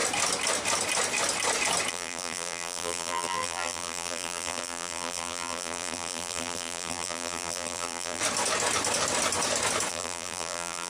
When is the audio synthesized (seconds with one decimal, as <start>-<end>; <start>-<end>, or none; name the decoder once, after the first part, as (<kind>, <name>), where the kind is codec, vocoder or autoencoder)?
1.9-8.2 (vocoder, BigVGAN v2); 9.9-10.9